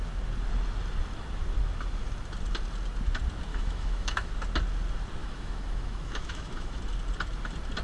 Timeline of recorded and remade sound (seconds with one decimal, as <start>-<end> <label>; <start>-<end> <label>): 0.0-3.5 recorded; 3.5-4.3 remade; 4.3-5.2 recorded; 5.2-6.8 remade; 6.8-7.8 recorded